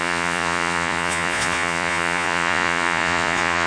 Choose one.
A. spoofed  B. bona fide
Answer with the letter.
A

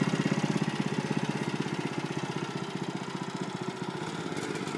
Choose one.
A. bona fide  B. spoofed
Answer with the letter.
A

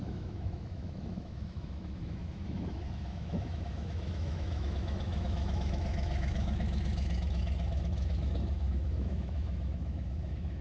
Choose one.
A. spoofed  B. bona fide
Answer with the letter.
A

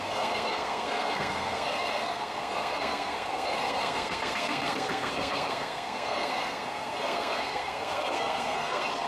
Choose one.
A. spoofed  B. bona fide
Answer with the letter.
A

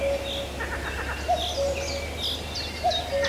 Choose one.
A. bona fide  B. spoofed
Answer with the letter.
A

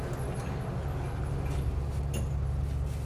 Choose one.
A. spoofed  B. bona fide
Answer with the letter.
B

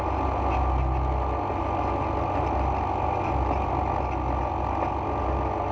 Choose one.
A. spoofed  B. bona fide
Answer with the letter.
B